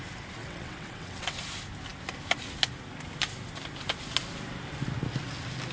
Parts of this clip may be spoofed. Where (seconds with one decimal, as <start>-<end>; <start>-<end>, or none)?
0.4-1.4